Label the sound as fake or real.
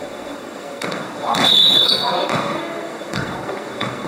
fake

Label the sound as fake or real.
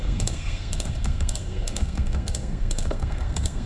fake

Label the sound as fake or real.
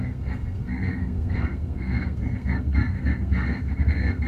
fake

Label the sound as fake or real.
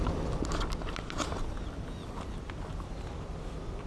real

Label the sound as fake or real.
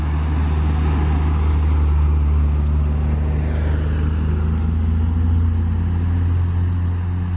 real